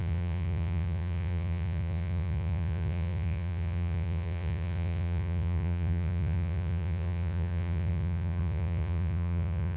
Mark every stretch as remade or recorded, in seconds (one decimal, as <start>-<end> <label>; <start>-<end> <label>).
0.0-9.8 remade